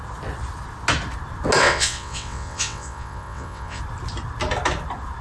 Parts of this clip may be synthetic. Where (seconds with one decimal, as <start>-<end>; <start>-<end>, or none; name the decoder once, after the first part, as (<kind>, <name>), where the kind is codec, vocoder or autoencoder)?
1.6-3.8 (vocoder, WaveNeXt)